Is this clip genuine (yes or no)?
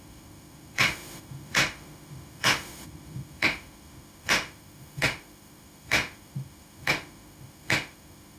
no